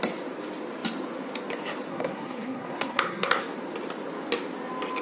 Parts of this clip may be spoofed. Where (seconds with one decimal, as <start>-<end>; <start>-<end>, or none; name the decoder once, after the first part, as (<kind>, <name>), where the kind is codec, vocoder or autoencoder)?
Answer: 1.9-3.4 (codec, SNAC)